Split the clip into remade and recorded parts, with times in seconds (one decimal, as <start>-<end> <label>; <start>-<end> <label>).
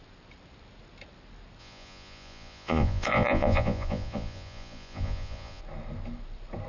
0.0-1.6 recorded; 1.6-5.6 remade; 5.6-6.7 recorded